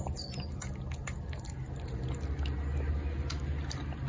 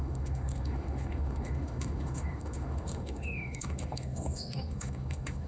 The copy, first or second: second